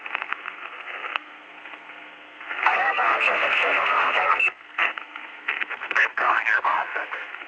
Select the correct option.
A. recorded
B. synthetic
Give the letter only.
B